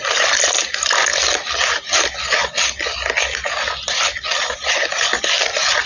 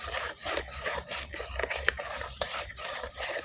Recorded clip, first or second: first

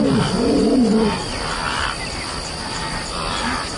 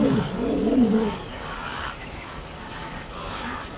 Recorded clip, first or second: first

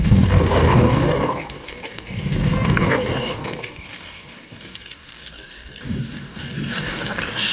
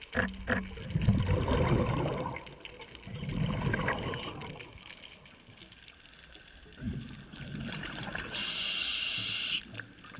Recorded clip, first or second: second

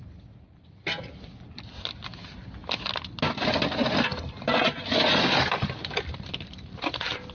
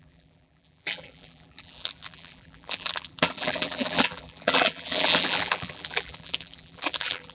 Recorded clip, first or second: first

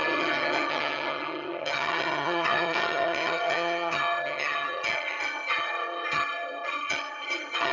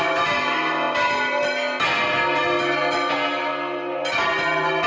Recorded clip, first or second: second